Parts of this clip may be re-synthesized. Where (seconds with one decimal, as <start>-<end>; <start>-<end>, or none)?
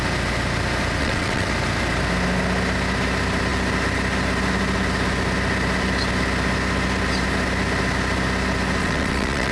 1.0-1.5; 8.8-9.5